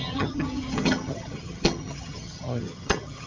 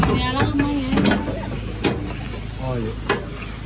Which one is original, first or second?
second